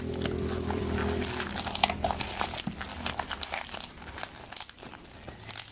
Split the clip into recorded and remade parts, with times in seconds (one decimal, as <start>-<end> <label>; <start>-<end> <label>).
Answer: 0.0-1.0 remade; 1.0-2.3 recorded; 2.3-2.9 remade; 2.9-4.6 recorded; 4.6-5.7 remade